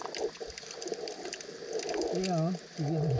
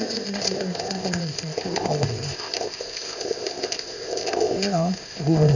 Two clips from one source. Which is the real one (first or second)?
first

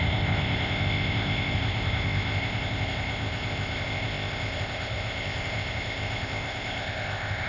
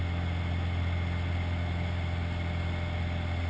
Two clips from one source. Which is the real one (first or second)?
second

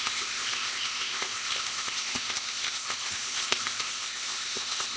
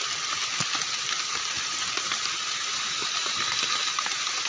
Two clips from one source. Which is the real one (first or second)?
second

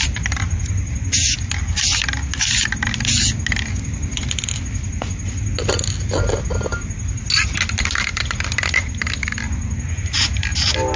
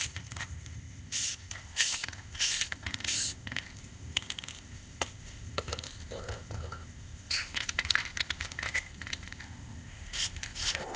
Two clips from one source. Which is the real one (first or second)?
first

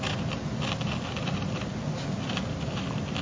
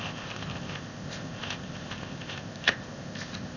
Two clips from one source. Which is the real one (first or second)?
first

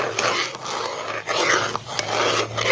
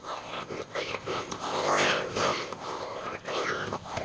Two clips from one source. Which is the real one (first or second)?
first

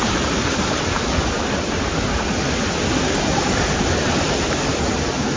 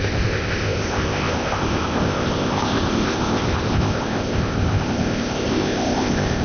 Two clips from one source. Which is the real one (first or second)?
first